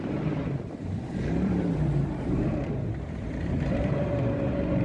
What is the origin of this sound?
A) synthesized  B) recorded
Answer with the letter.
A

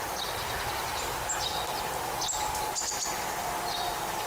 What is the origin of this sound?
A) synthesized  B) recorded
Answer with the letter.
B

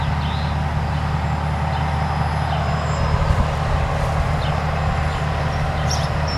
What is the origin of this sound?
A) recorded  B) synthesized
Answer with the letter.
A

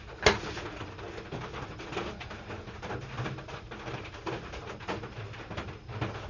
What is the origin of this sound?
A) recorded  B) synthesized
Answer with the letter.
A